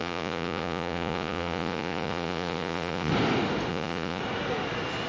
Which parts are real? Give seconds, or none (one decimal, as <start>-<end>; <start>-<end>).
3.1-3.7; 4.2-5.1